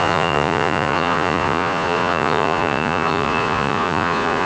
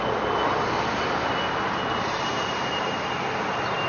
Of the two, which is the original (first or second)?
second